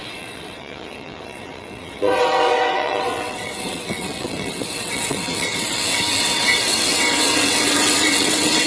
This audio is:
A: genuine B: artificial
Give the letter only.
B